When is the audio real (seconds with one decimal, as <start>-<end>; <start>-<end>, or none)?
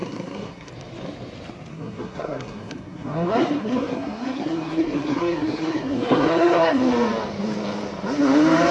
0.7-1.7; 6.8-8.7